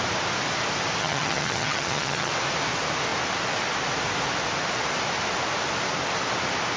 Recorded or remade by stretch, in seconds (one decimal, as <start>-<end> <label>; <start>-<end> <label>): 0.0-1.0 recorded; 1.0-2.3 remade; 2.3-6.8 recorded